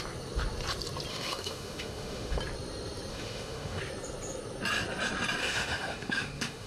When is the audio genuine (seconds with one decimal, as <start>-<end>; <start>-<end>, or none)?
0.0-1.1; 2.4-3.1; 3.8-5.4